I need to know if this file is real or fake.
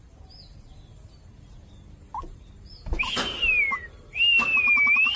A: real